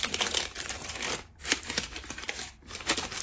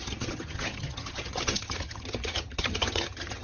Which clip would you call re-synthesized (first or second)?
second